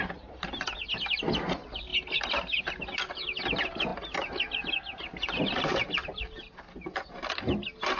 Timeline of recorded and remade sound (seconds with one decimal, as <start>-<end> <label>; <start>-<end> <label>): 0.0-8.0 recorded